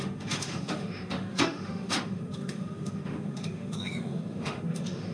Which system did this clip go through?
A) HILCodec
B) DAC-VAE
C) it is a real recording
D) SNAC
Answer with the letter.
B